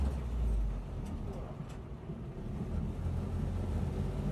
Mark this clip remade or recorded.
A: recorded